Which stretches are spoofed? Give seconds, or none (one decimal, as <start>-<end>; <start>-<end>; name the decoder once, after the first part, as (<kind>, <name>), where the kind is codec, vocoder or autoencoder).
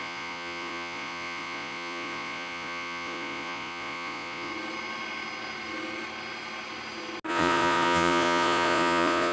0.0-4.5 (vocoder, Vocos); 7.3-9.3